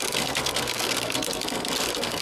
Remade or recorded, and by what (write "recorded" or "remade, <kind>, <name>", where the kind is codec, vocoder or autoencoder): remade, codec, SNAC